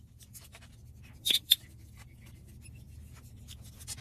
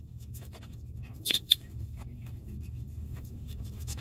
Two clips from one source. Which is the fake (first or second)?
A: second